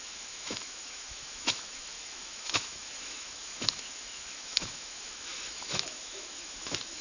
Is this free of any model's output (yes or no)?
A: no